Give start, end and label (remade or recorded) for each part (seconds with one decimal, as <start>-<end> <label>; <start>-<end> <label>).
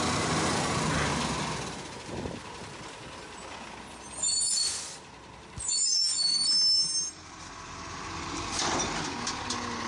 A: 0.0-9.9 recorded